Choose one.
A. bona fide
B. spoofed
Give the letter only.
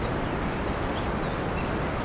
A